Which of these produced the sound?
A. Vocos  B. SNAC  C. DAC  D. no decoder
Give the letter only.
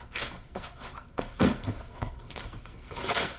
B